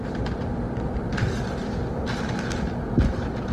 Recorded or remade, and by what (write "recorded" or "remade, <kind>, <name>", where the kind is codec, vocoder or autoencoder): recorded